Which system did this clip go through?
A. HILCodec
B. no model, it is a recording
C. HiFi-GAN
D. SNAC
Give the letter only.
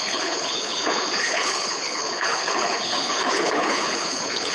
A